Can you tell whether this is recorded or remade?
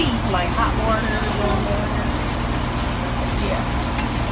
recorded